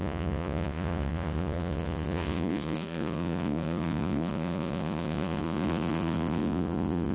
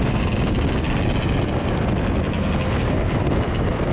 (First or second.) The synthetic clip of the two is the first